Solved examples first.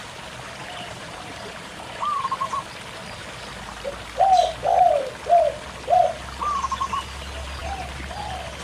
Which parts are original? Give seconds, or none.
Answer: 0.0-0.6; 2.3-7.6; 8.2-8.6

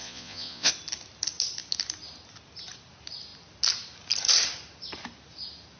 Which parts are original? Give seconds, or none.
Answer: 0.7-5.8